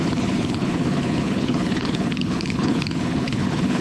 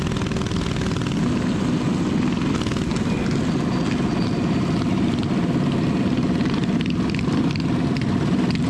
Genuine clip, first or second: second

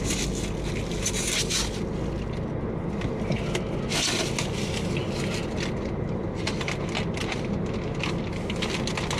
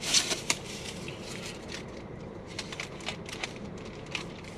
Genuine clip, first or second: first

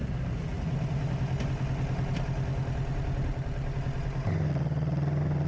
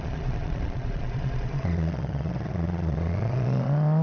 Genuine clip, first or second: first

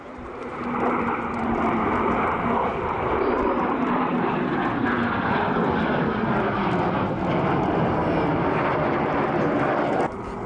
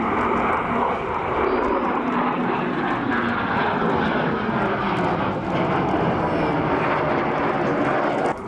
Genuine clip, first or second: second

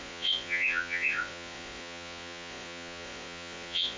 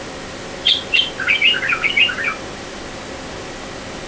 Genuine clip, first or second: second